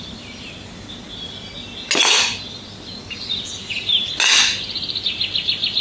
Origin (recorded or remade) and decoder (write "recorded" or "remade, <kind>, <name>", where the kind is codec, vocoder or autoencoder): recorded